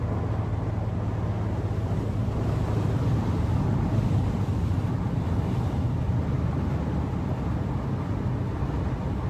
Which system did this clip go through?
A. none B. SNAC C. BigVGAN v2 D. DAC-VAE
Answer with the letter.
A